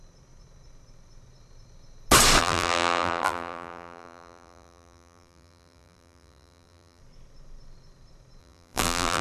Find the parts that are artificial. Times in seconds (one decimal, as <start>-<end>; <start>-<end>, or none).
2.4-7.0; 8.4-9.2

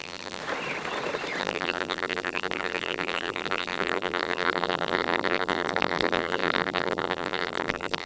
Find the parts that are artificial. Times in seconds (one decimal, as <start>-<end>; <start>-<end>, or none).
0.0-0.4; 1.4-8.1

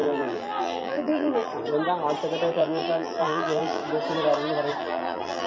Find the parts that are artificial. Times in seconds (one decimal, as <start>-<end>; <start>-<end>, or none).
0.0-1.5; 2.5-3.8; 4.8-5.5